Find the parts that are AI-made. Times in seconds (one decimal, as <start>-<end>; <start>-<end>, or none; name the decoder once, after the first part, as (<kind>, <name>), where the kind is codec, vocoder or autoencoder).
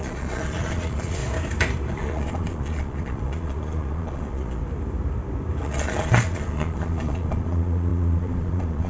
0.0-1.2 (vocoder, Vocos); 1.9-4.6; 5.6-8.9